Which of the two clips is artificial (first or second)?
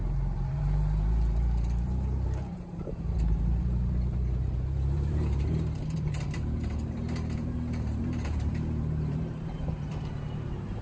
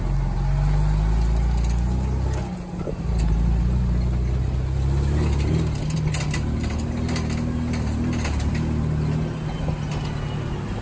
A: first